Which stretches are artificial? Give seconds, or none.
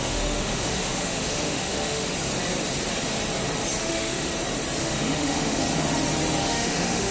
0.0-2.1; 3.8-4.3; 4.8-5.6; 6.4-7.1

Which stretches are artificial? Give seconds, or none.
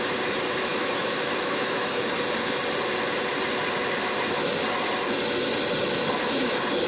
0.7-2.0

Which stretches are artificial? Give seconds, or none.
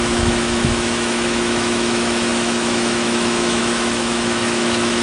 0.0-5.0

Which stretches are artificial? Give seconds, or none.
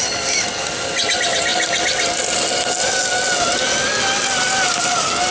none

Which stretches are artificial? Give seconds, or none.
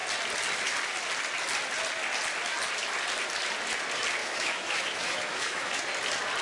4.2-5.8